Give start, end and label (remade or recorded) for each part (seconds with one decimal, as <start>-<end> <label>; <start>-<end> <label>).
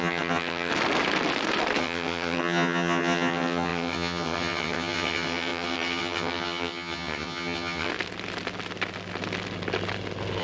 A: 0.0-0.7 remade; 0.7-1.8 recorded; 1.8-7.9 remade; 7.9-10.4 recorded